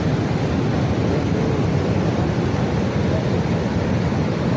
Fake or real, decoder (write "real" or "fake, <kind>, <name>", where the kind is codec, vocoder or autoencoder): real